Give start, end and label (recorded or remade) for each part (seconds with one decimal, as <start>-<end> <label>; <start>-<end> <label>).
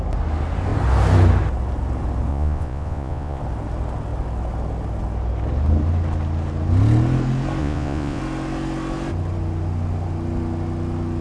0.0-2.3 recorded; 2.3-3.4 remade; 3.4-7.6 recorded; 7.6-8.2 remade; 8.2-11.2 recorded